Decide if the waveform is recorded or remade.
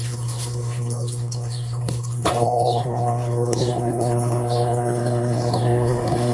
remade